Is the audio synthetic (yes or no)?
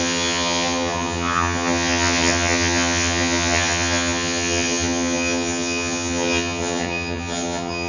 yes